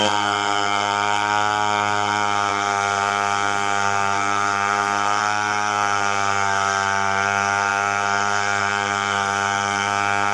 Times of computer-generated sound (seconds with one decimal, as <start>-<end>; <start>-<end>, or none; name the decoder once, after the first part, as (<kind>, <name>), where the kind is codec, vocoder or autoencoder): 0.0-10.3 (codec, SNAC)